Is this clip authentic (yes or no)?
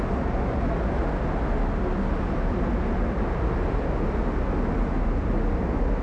yes